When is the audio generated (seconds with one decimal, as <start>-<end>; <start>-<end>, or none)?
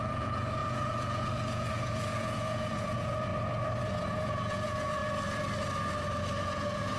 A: 0.0-3.3; 3.8-5.0; 6.4-7.0